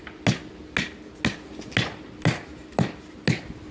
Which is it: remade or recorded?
recorded